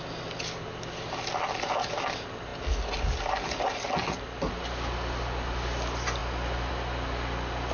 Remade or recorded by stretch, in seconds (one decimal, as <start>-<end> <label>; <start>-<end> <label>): 0.0-7.7 recorded